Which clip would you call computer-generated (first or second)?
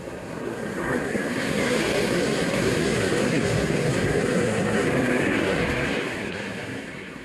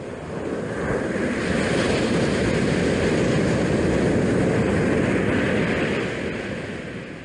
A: first